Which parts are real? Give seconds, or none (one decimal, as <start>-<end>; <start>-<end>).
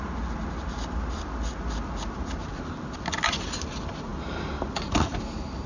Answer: 0.0-5.7